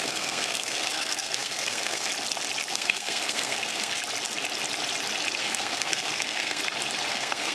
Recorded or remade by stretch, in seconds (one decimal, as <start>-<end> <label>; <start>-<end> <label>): 0.0-2.1 remade; 2.1-2.7 recorded; 2.7-4.0 remade; 4.0-5.4 recorded; 5.4-6.6 remade; 6.6-7.1 recorded; 7.1-7.5 remade